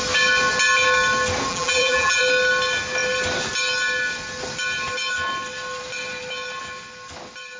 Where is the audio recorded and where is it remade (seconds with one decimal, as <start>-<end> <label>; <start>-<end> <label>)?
0.0-1.5 recorded; 1.5-2.2 remade; 2.2-7.6 recorded

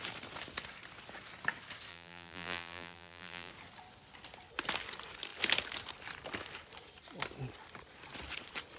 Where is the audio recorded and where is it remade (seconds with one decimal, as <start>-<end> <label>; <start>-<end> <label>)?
0.0-1.9 recorded; 1.9-3.5 remade; 3.5-8.8 recorded

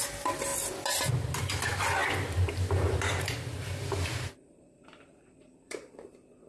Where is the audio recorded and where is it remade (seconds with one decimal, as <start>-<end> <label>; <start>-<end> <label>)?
0.0-2.0 recorded; 2.0-5.9 remade; 5.9-6.5 recorded

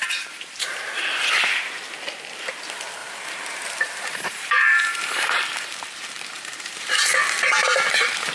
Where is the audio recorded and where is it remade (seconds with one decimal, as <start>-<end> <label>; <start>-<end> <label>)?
0.0-0.8 remade; 0.8-3.0 recorded; 3.0-6.9 remade; 6.9-7.6 recorded; 7.6-8.3 remade

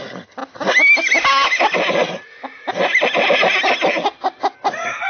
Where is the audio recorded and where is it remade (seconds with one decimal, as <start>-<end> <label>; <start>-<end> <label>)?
0.0-0.4 recorded; 0.4-2.8 remade; 2.8-5.1 recorded

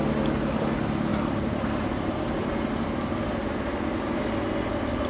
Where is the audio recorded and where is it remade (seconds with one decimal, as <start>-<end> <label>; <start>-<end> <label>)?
0.0-1.1 recorded; 1.1-4.2 remade; 4.2-5.1 recorded